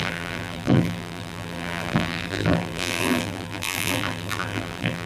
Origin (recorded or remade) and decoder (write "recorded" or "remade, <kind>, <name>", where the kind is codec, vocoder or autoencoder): remade, vocoder, BigVGAN v2